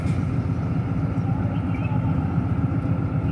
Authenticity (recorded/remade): recorded